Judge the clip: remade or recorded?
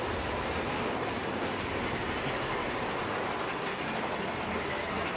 recorded